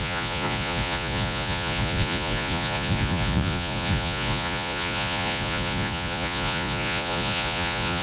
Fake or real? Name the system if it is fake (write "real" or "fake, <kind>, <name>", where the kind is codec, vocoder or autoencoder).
fake, vocoder, Vocos